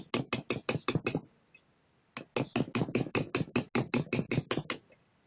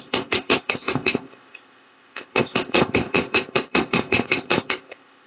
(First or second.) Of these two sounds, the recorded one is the first